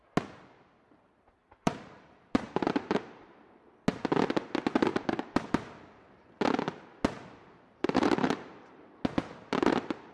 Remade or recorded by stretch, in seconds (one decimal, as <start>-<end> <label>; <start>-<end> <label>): 0.0-1.4 recorded; 1.4-3.7 remade; 3.7-4.9 recorded; 4.9-5.5 remade; 5.5-7.2 recorded; 7.2-9.0 remade; 9.0-10.1 recorded